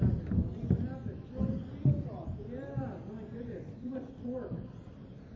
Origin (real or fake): real